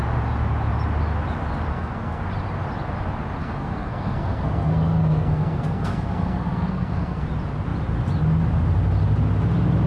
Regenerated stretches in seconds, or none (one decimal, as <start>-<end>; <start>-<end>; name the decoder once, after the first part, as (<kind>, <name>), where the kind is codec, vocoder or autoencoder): 1.7-2.2 (codec, SNAC); 3.4-7.3